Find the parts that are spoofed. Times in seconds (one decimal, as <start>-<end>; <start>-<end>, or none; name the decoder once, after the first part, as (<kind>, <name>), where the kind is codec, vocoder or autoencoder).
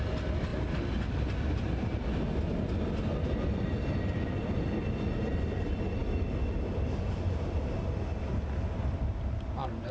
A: none